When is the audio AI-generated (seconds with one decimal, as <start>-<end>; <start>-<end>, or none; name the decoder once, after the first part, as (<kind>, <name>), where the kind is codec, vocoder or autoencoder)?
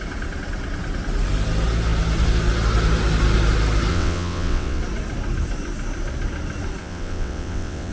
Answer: 3.9-4.8 (vocoder, WaveNeXt); 6.8-7.9